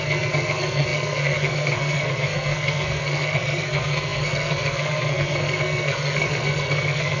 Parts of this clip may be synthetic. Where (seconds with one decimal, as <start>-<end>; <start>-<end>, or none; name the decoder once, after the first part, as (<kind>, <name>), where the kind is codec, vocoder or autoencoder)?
0.0-7.2 (codec, SNAC)